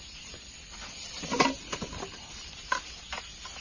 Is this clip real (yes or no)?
yes